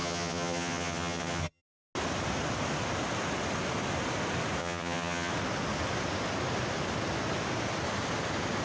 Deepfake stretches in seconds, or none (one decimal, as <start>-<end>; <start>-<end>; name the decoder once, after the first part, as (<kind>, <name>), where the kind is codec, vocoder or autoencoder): 0.0-1.6 (vocoder, HiFi-GAN); 4.6-5.3